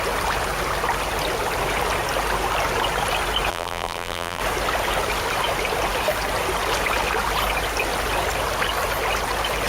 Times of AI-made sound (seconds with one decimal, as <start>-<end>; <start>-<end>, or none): 3.5-4.4